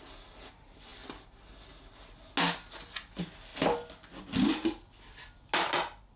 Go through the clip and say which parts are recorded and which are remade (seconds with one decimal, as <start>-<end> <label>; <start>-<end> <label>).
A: 0.0-6.2 recorded